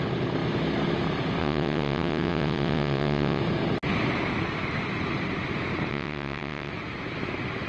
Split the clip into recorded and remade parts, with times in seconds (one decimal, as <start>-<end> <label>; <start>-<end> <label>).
0.0-1.4 recorded; 1.4-3.4 remade; 3.4-5.9 recorded; 5.9-6.7 remade; 6.7-7.7 recorded